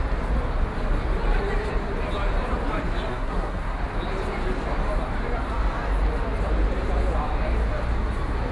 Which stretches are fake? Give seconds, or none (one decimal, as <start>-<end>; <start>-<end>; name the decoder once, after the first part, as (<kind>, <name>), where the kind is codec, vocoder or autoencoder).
3.1-3.8 (codec, SNAC)